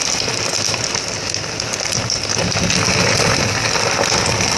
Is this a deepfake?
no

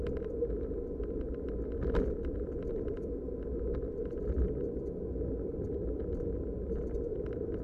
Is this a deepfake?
no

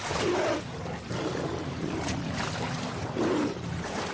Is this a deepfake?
yes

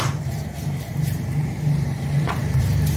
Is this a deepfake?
yes